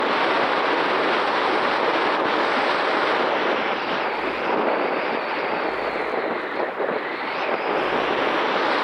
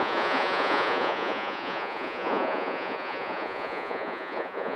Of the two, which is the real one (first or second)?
first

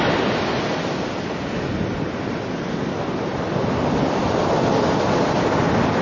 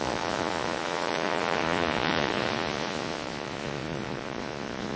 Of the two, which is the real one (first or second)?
first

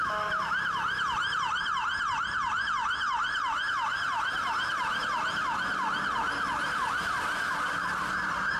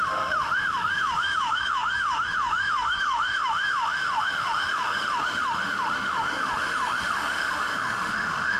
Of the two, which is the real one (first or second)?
first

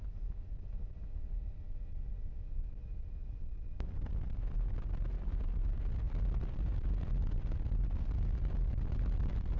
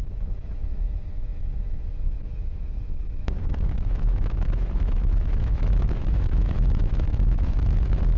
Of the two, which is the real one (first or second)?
first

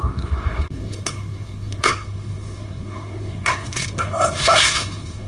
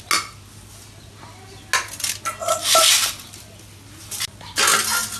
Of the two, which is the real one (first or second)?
second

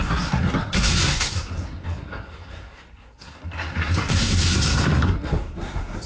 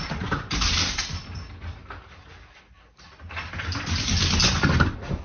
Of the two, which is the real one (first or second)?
second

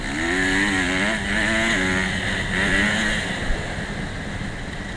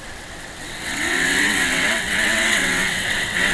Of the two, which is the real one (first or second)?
first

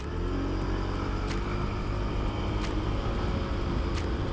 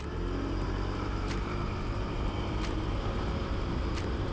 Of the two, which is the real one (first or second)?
first